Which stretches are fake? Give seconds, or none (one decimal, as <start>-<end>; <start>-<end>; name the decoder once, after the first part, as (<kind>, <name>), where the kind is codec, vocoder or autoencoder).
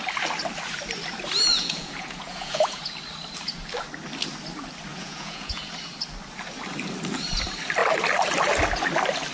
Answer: 1.6-2.8 (vocoder, Vocos); 4.9-5.6